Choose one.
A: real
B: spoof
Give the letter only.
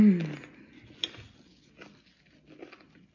A